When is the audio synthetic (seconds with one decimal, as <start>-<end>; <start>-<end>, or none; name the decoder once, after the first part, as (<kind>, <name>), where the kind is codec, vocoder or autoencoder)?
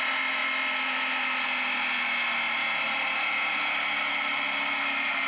none